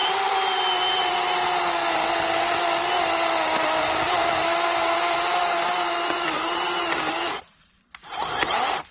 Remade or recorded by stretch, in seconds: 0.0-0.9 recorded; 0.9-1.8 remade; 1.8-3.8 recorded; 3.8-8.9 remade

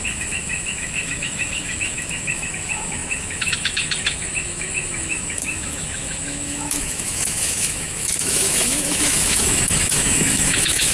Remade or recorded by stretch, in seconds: 0.0-10.9 remade